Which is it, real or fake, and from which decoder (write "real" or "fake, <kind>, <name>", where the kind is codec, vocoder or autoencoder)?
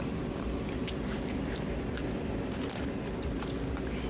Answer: real